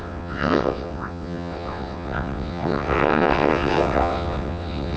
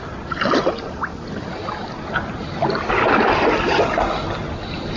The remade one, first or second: first